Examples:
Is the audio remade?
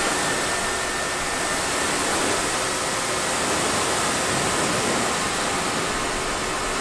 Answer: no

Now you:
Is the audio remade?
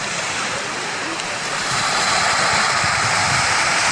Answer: yes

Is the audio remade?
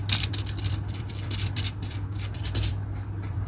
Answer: yes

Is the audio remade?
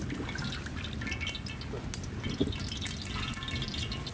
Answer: no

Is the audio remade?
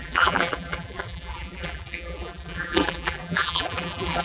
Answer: yes